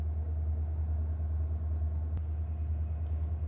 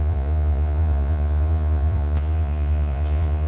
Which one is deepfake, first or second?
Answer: second